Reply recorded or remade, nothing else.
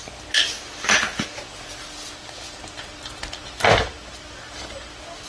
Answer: recorded